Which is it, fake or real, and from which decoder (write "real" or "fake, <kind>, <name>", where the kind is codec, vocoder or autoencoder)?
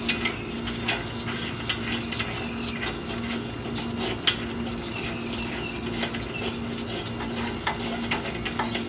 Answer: real